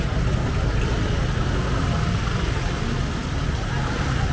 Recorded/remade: recorded